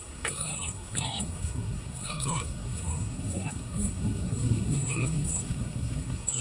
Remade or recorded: remade